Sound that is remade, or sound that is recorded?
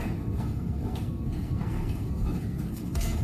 remade